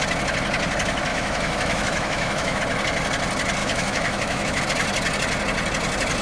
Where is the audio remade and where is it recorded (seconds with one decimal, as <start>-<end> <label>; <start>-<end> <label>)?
0.0-1.1 recorded; 1.1-2.6 remade; 2.6-3.6 recorded; 3.6-4.6 remade; 4.6-6.2 recorded